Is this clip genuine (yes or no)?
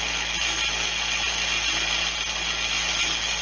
yes